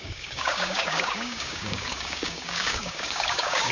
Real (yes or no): no